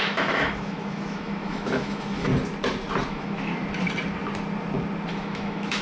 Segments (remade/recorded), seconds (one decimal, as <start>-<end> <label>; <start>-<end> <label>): 0.0-2.3 remade; 2.3-3.1 recorded; 3.1-3.5 remade; 3.5-5.1 recorded; 5.1-5.8 remade